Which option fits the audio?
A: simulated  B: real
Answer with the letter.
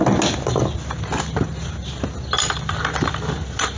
B